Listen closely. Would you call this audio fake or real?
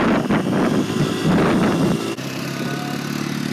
real